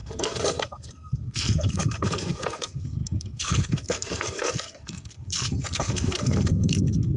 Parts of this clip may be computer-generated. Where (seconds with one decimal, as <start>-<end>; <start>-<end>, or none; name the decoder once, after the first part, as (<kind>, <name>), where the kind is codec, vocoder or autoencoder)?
0.0-7.2 (codec, SNAC)